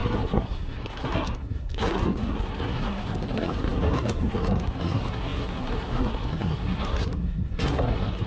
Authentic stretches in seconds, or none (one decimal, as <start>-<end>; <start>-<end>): none